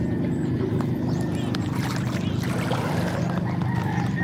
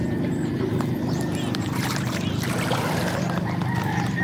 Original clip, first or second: first